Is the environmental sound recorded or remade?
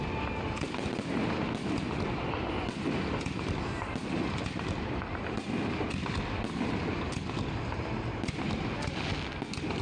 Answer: recorded